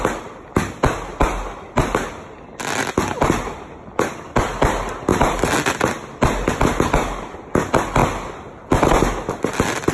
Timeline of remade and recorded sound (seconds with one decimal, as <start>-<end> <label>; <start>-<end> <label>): 0.0-9.9 recorded